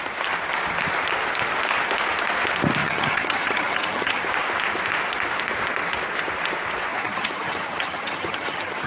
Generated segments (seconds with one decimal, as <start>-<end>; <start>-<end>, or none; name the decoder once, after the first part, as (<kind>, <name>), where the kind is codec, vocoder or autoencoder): 2.8-4.2 (vocoder, HiFi-GAN); 6.9-8.9